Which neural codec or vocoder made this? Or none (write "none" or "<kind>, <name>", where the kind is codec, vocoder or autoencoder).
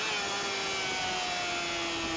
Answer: none